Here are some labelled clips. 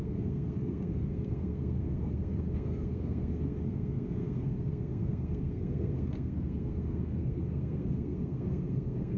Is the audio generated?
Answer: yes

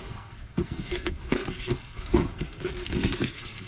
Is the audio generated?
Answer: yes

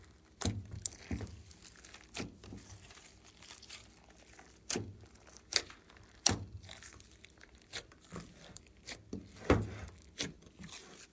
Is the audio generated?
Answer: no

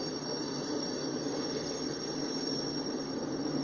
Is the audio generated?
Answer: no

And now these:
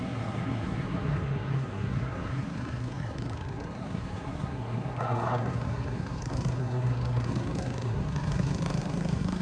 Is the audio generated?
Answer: yes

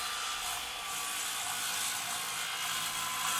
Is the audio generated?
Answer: no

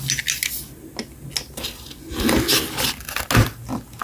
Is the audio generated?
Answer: no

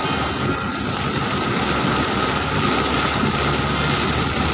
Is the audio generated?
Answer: no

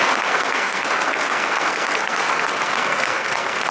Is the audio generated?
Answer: yes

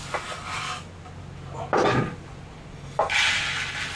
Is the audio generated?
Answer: no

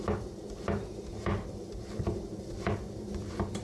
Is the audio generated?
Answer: no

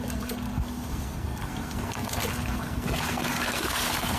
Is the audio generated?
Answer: yes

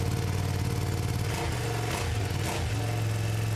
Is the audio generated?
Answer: no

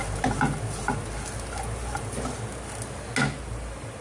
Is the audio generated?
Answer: no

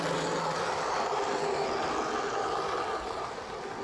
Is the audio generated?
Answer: no